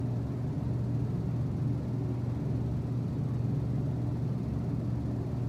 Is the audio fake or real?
real